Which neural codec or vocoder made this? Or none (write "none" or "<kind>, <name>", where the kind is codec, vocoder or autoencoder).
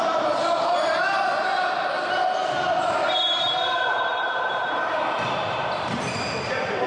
vocoder, BigVGAN v2